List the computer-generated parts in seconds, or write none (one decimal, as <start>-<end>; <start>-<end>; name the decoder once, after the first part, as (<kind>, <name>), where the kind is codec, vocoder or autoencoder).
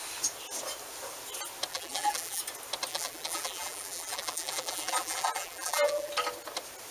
1.7-2.4 (vocoder, BigVGAN v2); 2.9-6.1